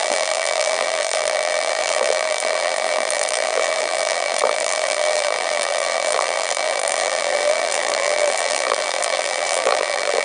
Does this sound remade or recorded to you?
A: remade